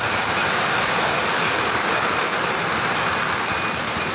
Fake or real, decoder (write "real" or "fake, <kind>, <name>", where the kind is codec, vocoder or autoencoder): real